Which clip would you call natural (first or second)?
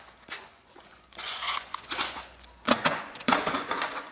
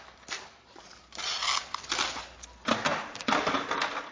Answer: second